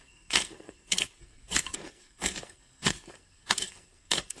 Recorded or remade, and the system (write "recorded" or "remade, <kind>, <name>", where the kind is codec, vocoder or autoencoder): remade, codec, SNAC